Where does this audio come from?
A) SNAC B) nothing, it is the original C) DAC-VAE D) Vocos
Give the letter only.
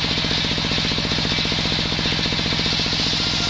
B